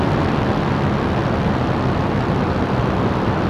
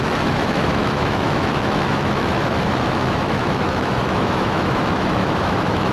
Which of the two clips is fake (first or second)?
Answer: second